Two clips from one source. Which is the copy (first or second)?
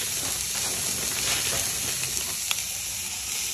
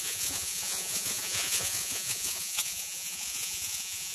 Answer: second